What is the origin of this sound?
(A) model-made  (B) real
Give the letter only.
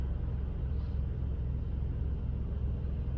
B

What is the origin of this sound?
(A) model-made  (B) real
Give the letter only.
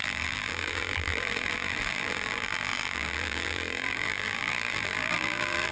A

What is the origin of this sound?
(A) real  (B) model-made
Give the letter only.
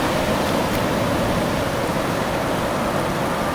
A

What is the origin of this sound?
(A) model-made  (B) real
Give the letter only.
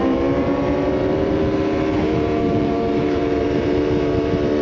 A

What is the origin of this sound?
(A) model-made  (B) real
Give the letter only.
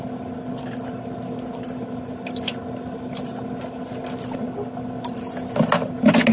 B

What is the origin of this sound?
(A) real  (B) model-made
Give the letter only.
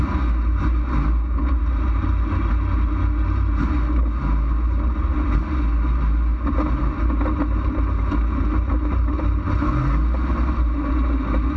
A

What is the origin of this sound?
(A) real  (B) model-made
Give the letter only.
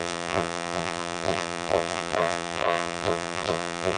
B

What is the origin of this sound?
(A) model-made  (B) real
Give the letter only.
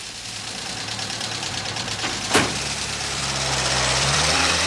A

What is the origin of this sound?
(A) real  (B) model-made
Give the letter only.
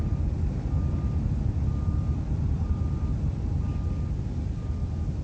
A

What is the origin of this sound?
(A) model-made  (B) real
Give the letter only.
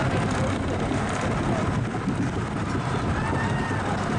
B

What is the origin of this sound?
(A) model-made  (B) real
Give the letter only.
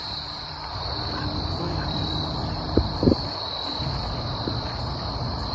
A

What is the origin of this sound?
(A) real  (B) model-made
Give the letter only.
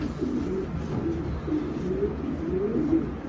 A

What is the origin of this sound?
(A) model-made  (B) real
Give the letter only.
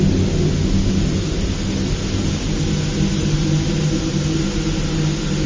B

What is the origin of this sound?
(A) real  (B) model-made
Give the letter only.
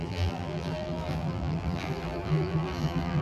B